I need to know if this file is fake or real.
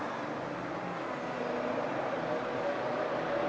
real